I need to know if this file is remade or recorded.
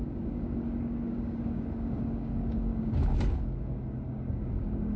remade